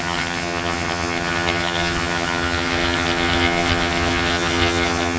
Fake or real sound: fake